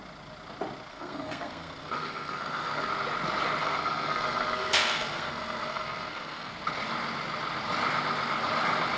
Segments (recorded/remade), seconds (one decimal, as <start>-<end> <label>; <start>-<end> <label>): 0.0-0.9 recorded; 0.9-2.9 remade; 2.9-3.6 recorded; 3.6-6.5 remade; 6.5-9.0 recorded